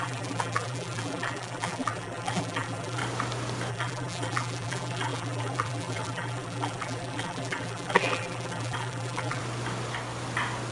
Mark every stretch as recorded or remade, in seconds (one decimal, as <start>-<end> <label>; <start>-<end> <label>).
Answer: 0.0-3.0 remade; 3.0-3.7 recorded; 3.7-9.4 remade; 9.4-10.7 recorded